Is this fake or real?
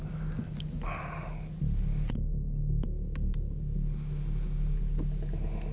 real